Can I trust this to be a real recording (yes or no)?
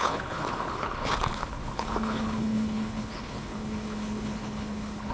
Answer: no